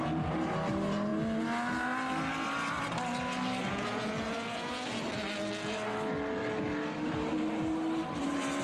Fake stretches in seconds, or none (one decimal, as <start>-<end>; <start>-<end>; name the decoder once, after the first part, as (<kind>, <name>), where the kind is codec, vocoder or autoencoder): 3.6-5.0 (vocoder, Vocos)